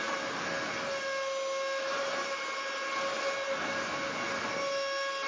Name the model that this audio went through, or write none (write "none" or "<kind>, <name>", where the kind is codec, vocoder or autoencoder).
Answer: none